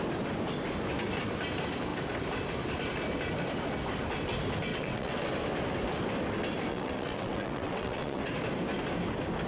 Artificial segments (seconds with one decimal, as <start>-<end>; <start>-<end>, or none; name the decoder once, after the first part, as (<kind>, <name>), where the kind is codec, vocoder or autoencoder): 4.7-5.2 (vocoder, WaveNeXt); 6.7-8.2

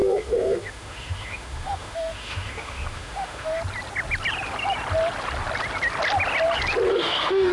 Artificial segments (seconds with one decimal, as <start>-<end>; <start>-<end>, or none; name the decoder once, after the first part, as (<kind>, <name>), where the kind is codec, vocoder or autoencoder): 0.0-3.6 (autoencoder, DAC-VAE); 6.9-7.5